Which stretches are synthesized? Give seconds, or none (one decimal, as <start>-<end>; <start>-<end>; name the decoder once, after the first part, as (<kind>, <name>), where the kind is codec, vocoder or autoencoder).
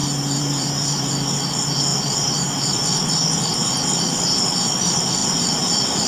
0.0-1.1 (vocoder, BigVGAN v2); 1.9-2.8